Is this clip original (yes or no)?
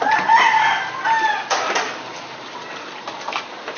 yes